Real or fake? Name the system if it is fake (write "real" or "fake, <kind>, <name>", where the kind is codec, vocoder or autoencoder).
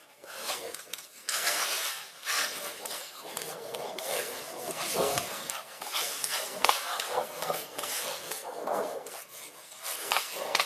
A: fake, codec, SNAC